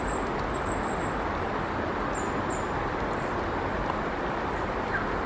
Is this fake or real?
real